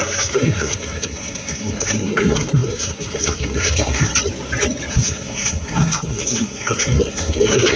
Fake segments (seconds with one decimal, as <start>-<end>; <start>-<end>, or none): 0.0-4.1; 4.9-7.8